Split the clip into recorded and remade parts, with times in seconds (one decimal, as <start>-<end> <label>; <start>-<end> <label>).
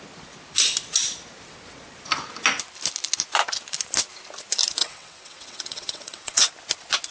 0.0-4.8 recorded; 4.8-6.5 remade; 6.5-7.1 recorded